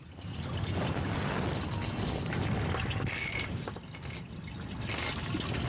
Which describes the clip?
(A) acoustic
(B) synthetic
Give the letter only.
A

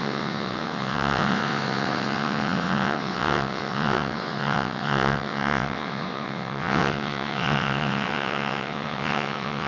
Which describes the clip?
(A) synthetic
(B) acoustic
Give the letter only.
A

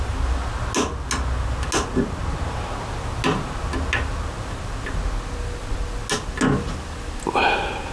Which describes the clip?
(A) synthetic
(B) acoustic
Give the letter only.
B